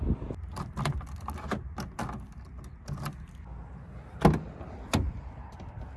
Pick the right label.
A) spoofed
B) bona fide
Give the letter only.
B